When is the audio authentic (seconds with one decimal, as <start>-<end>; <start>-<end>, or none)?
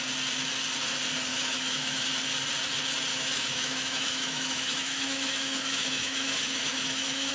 0.0-1.3; 2.1-3.1